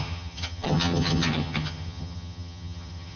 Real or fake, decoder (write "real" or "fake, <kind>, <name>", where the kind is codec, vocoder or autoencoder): fake, vocoder, HiFi-GAN